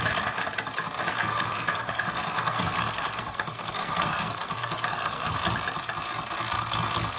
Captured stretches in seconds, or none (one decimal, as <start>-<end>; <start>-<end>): 0.0-1.1; 5.4-7.2